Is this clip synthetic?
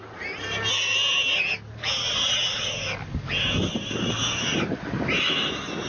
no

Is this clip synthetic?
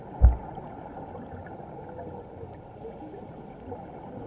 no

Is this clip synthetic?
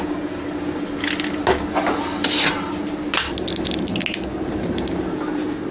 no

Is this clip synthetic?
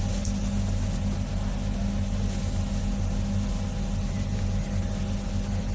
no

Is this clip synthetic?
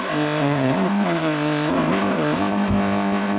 yes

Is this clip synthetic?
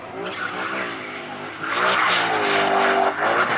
no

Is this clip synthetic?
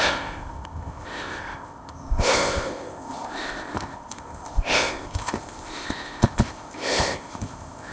yes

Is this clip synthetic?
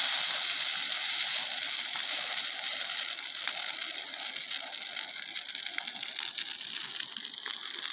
no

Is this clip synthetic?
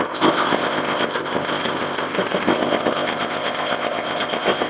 yes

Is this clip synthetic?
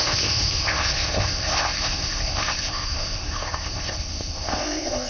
yes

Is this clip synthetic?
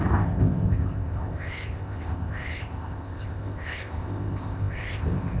yes